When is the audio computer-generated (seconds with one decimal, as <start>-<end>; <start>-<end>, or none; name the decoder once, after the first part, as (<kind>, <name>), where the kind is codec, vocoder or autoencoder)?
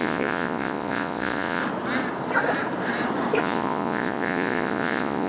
0.0-1.6 (vocoder, Vocos); 3.4-5.3